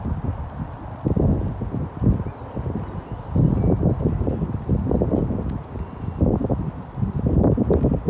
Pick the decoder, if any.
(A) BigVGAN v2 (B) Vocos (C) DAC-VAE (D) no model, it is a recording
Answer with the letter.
D